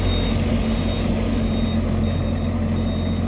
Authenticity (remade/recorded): recorded